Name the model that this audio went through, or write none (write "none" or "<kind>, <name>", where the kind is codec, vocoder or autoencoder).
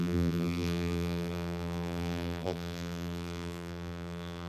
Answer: vocoder, BigVGAN v2